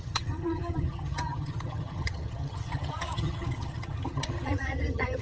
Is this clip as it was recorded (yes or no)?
no